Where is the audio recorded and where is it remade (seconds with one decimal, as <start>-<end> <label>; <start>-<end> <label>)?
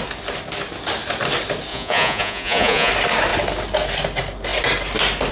0.0-1.7 recorded; 1.7-2.9 remade; 2.9-5.3 recorded